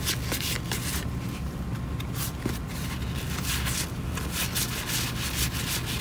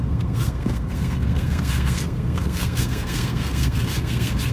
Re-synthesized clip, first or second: second